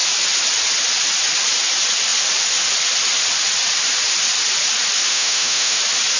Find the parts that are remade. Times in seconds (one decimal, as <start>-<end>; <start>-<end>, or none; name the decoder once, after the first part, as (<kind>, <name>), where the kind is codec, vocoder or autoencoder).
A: 5.1-5.8 (autoencoder, DAC-VAE)